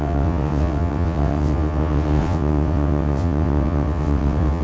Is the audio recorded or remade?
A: remade